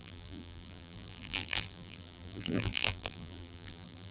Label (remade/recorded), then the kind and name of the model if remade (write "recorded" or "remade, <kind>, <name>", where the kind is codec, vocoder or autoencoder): remade, vocoder, BigVGAN v2